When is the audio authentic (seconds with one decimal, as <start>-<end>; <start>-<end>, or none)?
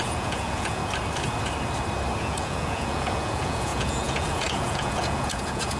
0.8-2.2